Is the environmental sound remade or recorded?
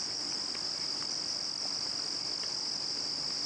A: recorded